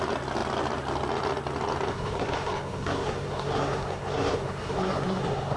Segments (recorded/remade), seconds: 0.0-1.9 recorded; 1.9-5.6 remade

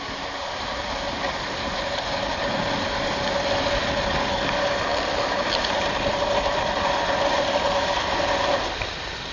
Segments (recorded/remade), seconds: 0.0-9.3 recorded

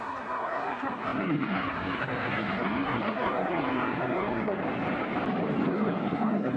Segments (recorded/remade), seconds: 0.0-4.6 remade; 4.6-5.7 recorded; 5.7-6.6 remade

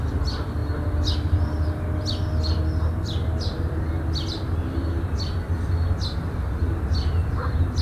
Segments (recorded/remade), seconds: 0.0-7.8 recorded

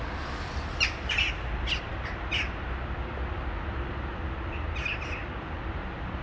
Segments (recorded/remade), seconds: 0.0-6.2 recorded